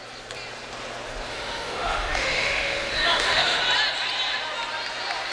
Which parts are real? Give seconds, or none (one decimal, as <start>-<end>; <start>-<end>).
0.0-1.3; 3.6-5.3